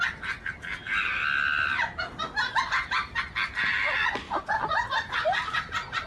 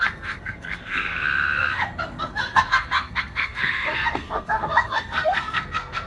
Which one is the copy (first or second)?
second